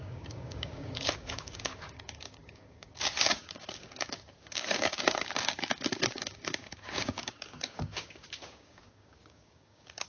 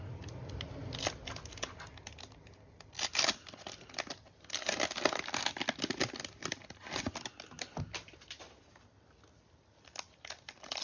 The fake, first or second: first